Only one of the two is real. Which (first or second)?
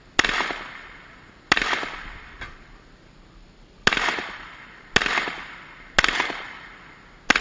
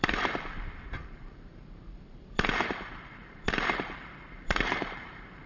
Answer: first